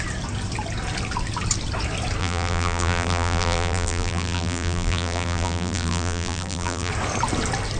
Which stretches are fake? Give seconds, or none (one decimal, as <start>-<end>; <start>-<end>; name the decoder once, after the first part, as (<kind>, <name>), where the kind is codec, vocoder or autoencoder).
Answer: 2.2-6.9 (vocoder, BigVGAN v2)